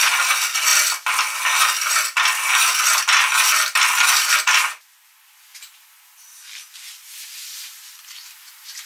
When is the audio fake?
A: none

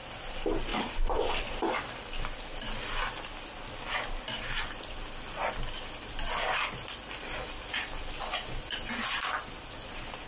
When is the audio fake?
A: 0.7-1.4 (vocoder, BigVGAN v2)

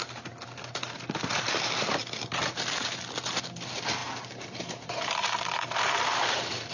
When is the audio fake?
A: 2.0-3.0 (vocoder, BigVGAN v2); 4.0-6.7

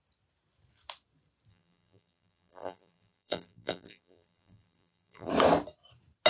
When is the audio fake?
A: 1.5-5.3 (vocoder, BigVGAN v2)

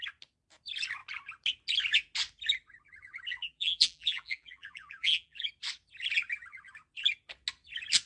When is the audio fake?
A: 3.4-5.5 (vocoder, BigVGAN v2)

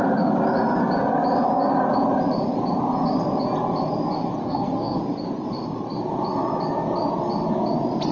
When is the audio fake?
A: 4.4-5.0 (codec, SNAC)

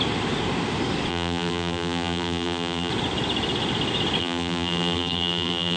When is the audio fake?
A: 1.1-2.9 (vocoder, BigVGAN v2); 4.2-5.8